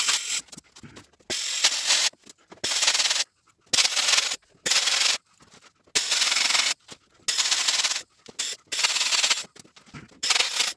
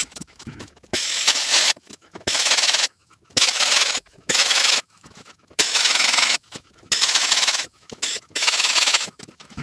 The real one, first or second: first